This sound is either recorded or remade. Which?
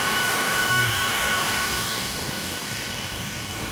remade